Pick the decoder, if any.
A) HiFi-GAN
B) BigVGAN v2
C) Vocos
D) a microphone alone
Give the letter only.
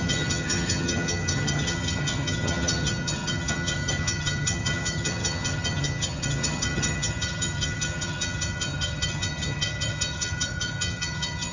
A